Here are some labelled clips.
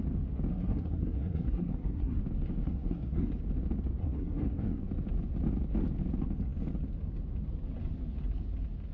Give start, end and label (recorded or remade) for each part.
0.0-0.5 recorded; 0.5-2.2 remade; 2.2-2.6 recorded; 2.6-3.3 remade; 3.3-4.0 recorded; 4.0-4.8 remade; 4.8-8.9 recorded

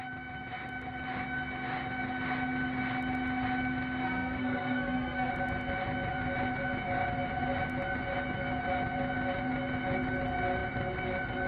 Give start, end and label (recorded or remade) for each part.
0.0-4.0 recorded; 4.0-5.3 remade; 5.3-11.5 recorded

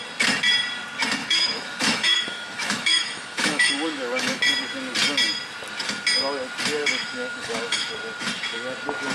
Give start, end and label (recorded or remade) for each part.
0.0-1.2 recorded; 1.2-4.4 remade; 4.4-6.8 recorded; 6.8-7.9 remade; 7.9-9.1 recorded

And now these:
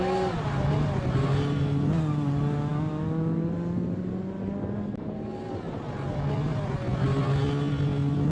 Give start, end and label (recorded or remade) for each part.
0.0-8.3 recorded

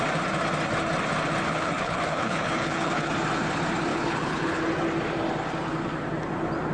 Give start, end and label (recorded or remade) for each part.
0.0-1.5 recorded; 1.5-3.1 remade; 3.1-3.9 recorded; 3.9-4.6 remade; 4.6-6.7 recorded